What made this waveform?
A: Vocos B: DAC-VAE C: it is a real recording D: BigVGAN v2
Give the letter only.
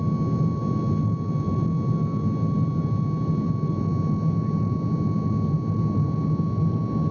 C